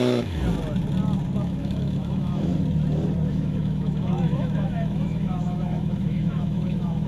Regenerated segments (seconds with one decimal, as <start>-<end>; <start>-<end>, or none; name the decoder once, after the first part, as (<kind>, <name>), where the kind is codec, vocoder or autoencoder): 0.0-0.4 (autoencoder, DAC-VAE); 1.4-2.5; 3.3-7.1